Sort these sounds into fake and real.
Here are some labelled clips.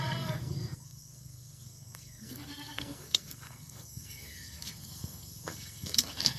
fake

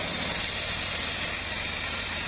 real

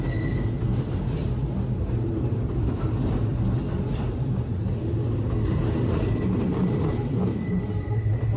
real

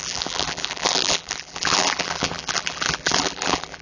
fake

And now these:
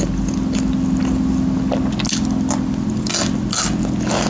real